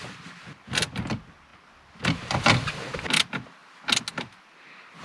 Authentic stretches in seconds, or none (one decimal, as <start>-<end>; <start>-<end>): 0.0-5.0